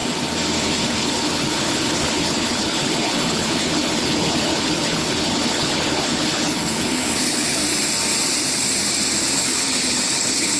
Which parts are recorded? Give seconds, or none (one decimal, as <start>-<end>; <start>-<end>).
0.0-0.6; 7.6-9.4